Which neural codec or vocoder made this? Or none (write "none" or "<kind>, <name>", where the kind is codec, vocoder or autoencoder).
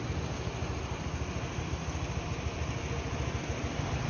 none